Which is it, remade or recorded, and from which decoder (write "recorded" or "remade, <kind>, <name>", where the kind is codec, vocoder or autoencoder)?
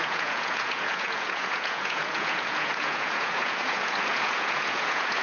remade, vocoder, Vocos